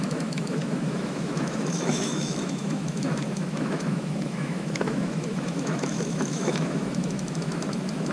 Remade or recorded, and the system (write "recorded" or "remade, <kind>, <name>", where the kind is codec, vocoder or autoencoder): remade, autoencoder, DAC-VAE